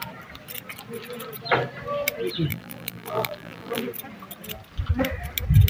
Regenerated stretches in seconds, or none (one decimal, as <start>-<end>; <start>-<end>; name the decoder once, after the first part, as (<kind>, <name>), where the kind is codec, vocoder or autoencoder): 2.5-3.8 (vocoder, BigVGAN v2)